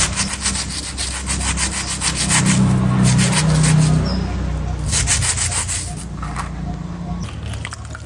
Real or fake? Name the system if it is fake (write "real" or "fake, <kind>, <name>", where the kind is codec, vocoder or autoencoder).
real